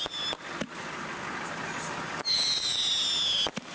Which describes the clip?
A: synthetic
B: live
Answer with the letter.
B